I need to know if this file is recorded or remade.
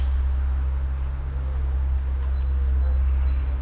recorded